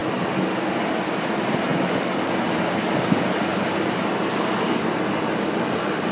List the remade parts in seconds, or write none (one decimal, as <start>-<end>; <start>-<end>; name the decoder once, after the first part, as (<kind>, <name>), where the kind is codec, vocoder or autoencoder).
0.9-1.7 (vocoder, BigVGAN v2); 3.5-6.1